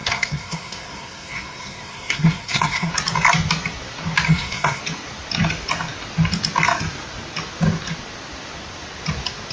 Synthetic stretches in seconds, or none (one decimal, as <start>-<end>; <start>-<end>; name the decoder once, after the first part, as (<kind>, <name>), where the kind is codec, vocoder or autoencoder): 0.0-2.9 (codec, SNAC); 4.3-4.8